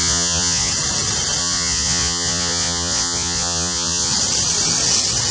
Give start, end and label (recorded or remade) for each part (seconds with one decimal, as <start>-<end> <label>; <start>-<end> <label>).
0.0-0.7 remade; 0.7-1.4 recorded; 1.4-4.1 remade; 4.1-5.3 recorded